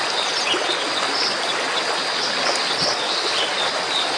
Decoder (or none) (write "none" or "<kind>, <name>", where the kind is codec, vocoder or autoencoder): none